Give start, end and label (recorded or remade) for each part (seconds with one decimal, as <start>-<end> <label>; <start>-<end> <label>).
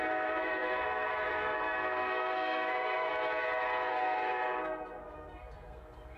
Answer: 0.0-3.1 remade; 3.1-3.9 recorded; 3.9-6.2 remade